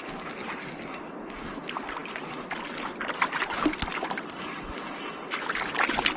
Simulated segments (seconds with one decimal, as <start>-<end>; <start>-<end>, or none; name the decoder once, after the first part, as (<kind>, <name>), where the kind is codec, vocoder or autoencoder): none